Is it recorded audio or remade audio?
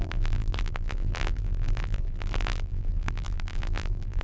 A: remade